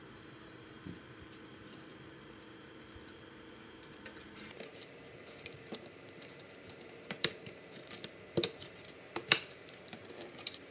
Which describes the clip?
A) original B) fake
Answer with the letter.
B